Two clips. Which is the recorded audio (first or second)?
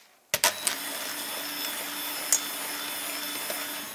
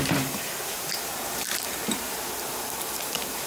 first